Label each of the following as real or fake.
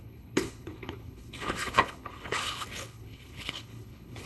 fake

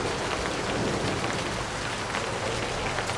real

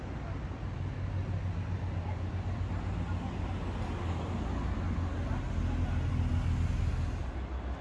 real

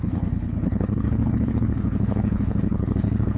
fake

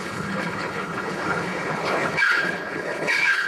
fake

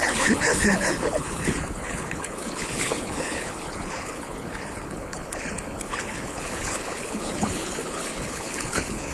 fake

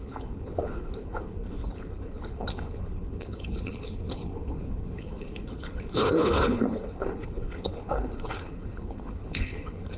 fake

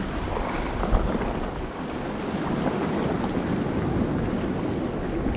real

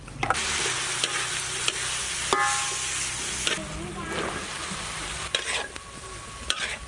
real